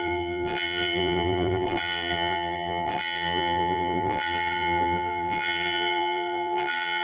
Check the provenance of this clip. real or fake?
fake